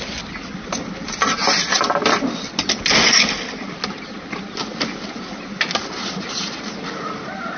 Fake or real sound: real